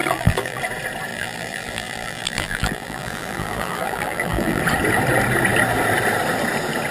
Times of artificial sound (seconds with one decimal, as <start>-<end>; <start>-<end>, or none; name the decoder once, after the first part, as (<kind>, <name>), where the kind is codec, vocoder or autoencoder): 0.0-0.6 (vocoder, BigVGAN v2); 1.1-4.6